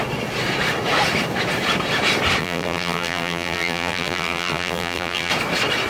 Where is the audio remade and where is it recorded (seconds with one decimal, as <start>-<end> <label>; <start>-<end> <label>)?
0.0-2.4 recorded; 2.4-5.3 remade; 5.3-5.9 recorded